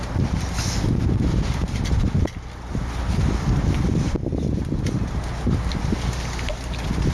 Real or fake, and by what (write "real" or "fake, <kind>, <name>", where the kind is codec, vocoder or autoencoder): real